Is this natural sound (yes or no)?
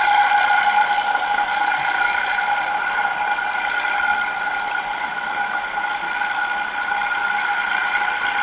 yes